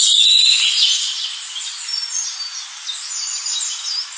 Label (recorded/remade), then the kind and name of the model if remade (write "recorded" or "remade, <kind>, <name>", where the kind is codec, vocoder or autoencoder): recorded